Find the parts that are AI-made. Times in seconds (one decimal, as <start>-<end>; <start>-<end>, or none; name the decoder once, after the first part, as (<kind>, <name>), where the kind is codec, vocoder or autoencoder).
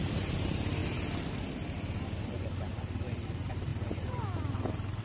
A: 0.0-0.8 (vocoder, BigVGAN v2); 2.6-5.0